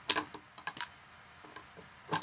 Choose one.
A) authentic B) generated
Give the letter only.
A